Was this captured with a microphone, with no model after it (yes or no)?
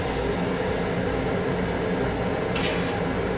yes